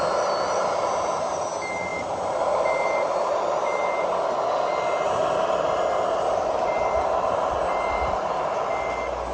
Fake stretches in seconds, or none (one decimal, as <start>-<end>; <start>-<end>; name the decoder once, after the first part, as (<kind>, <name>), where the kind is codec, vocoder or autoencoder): none